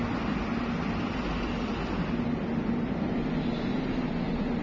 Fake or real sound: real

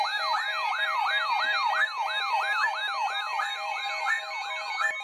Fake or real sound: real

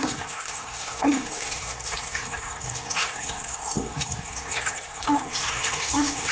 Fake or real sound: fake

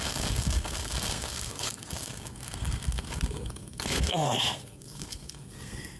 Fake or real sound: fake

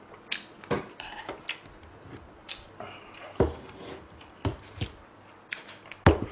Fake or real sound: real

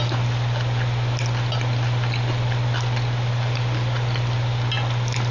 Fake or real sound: real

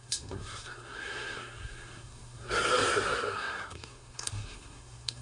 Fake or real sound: fake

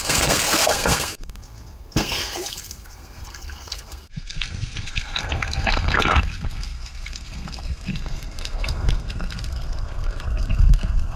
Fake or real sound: fake